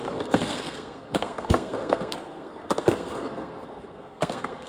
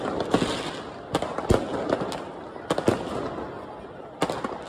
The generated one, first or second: first